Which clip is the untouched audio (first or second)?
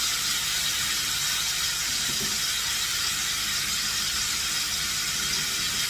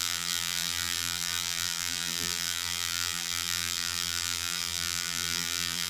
first